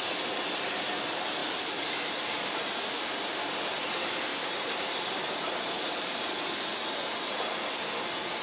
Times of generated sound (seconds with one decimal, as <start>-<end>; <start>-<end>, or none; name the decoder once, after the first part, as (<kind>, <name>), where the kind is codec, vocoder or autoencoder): 1.4-2.7 (vocoder, BigVGAN v2); 4.3-6.2